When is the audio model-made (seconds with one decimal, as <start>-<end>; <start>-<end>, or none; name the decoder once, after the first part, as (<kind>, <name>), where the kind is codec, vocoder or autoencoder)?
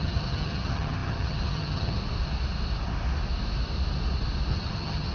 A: 0.0-2.0 (vocoder, HiFi-GAN); 4.5-5.1